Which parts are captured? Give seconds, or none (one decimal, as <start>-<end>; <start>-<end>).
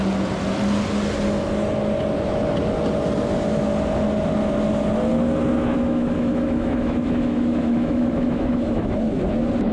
0.0-5.7; 8.9-9.7